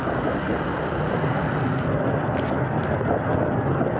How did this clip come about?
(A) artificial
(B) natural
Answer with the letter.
B